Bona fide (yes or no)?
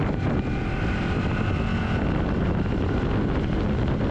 yes